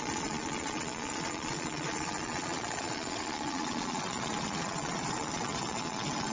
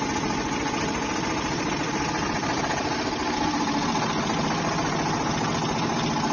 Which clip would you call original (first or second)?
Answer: second